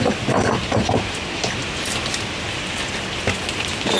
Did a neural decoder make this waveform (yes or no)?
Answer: no